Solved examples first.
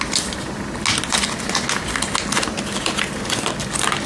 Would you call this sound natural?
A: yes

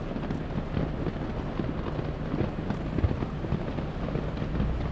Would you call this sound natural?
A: yes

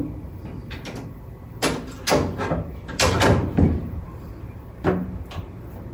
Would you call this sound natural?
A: yes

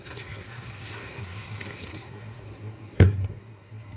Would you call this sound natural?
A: no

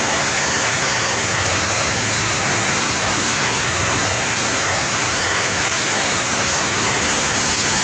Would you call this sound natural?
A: no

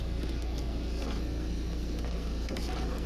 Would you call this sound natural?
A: no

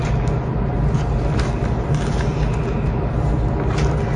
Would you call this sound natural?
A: yes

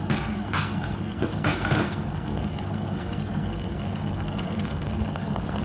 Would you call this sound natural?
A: no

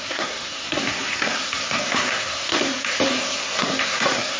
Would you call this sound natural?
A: no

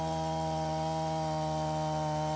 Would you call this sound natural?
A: yes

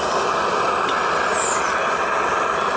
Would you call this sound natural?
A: yes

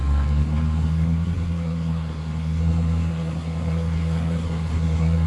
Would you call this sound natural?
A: no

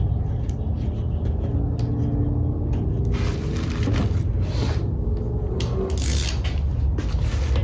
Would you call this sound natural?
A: yes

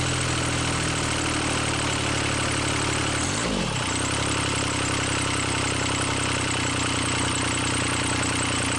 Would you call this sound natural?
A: yes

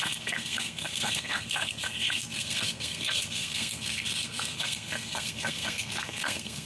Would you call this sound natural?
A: no